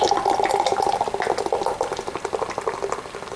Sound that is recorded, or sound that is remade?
recorded